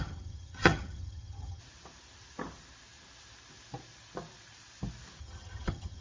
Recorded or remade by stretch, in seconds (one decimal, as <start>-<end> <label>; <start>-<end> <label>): 0.0-1.6 remade; 1.6-5.2 recorded; 5.2-6.0 remade

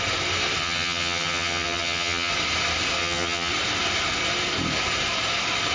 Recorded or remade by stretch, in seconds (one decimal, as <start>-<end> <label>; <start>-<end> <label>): 0.0-0.6 recorded; 0.6-2.3 remade; 2.3-3.0 recorded; 3.0-3.5 remade; 3.5-5.7 recorded

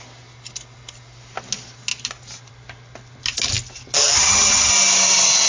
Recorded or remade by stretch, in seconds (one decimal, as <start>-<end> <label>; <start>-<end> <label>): 0.0-4.2 recorded; 4.2-4.7 remade; 4.7-5.5 recorded